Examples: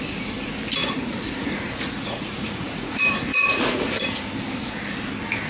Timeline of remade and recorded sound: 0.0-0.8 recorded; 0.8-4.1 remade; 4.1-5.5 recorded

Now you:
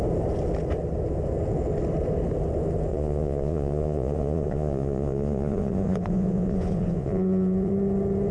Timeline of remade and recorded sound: 0.0-2.9 recorded; 2.9-7.7 remade; 7.7-8.3 recorded